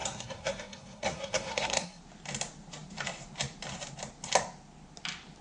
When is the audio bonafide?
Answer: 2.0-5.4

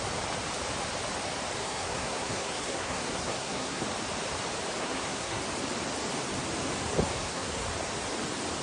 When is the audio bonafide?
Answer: 0.0-1.6; 3.8-4.8; 5.4-7.1; 7.6-8.6

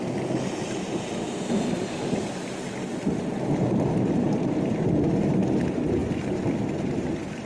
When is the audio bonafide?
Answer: 0.0-7.5

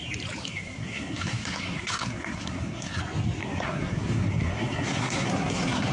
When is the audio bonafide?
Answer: 0.0-0.4; 3.0-3.4

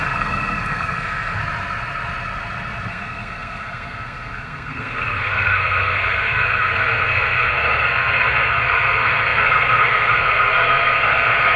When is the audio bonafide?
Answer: 1.4-2.9

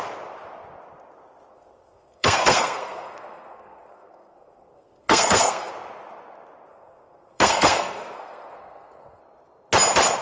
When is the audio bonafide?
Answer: 0.0-1.5; 5.7-6.7; 9.2-10.2

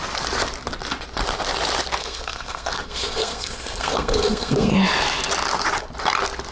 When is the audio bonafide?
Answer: 0.0-2.0; 4.7-6.5

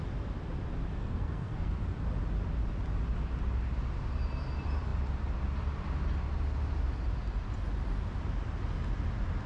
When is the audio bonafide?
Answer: 0.0-0.9; 1.8-9.5